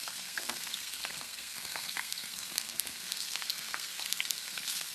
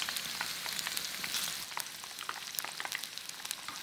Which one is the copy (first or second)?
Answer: first